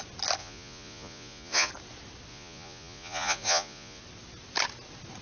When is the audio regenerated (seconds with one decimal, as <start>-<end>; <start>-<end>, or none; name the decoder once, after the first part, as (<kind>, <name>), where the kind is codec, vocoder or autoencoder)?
0.4-1.7 (vocoder, Vocos); 2.3-4.0